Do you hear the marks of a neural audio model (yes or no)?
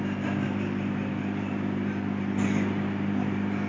yes